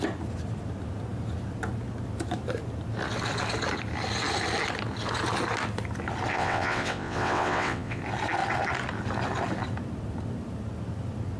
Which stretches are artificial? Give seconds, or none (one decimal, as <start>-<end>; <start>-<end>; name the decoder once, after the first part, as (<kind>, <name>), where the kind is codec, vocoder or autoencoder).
6.3-8.0 (vocoder, WaveNeXt)